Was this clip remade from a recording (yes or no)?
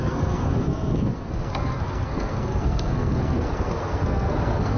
yes